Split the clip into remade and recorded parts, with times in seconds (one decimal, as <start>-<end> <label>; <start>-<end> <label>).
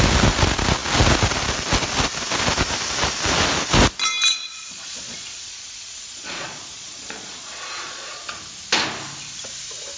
0.0-4.4 recorded; 4.4-8.4 remade; 8.4-10.0 recorded